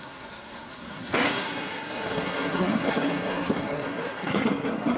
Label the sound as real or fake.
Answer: fake